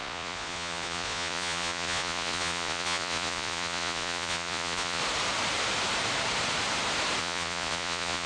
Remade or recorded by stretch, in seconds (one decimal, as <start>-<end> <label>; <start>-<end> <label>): 0.0-5.0 remade; 5.0-7.2 recorded; 7.2-8.3 remade